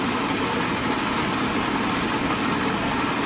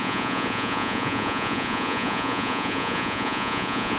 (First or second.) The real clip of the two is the first